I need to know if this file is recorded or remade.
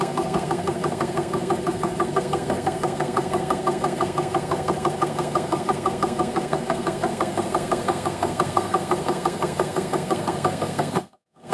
remade